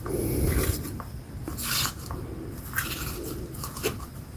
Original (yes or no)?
yes